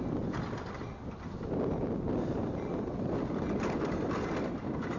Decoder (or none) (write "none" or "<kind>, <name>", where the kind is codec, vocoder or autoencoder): none